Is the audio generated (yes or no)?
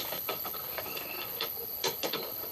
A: yes